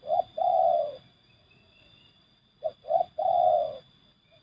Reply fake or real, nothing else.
fake